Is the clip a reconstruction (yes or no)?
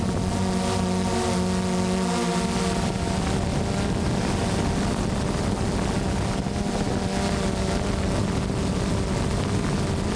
no